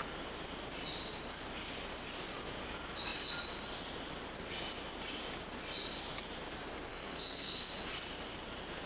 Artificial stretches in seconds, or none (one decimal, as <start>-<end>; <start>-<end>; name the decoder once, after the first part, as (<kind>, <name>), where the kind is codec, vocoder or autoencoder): 6.9-7.7 (codec, SNAC)